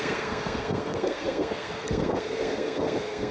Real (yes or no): no